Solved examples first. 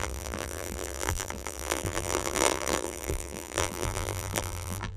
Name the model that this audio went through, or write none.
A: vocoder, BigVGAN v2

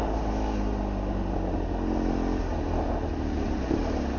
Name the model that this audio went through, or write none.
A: none